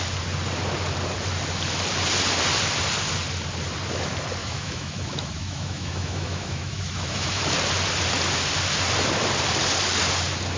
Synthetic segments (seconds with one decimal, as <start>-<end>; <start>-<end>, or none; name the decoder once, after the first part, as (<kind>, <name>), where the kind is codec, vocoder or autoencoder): 4.4-7.4 (autoencoder, DAC-VAE)